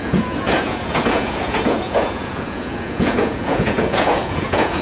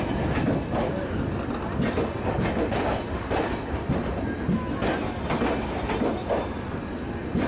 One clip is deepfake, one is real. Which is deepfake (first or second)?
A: first